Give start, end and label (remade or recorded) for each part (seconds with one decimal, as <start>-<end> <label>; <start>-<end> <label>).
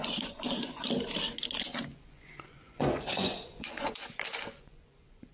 0.0-0.9 remade; 0.9-1.9 recorded; 1.9-5.3 remade